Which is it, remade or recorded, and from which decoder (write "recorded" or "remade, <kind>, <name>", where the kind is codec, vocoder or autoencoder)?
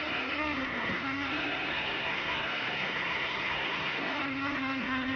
remade, codec, SNAC